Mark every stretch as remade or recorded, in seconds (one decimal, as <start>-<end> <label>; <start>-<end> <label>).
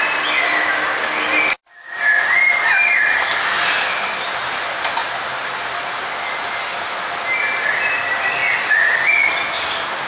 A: 0.0-10.1 recorded